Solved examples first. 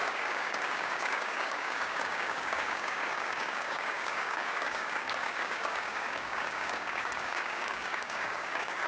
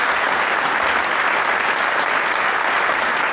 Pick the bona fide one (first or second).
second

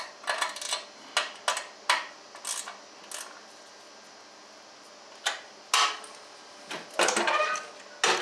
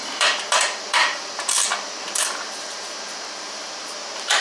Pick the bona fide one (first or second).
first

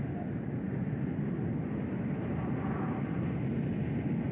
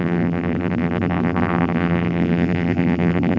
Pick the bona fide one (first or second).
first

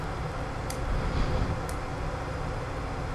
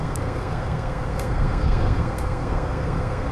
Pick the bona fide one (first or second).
first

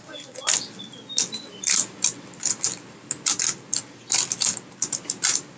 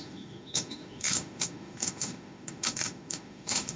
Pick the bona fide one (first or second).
first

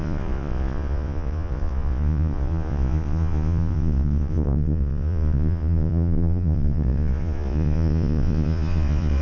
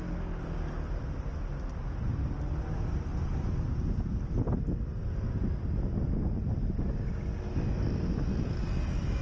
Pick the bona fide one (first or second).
second